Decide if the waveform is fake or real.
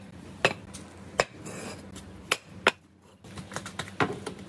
real